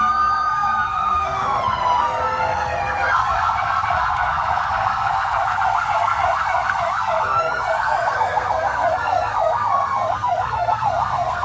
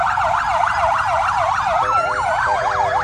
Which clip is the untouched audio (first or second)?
second